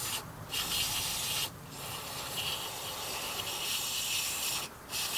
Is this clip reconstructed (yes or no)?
no